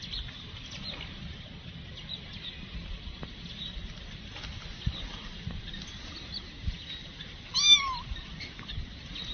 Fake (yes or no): no